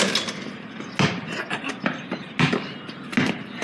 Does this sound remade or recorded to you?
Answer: recorded